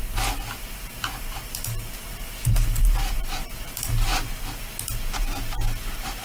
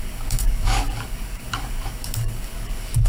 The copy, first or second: second